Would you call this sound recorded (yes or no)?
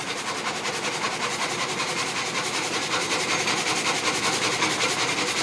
yes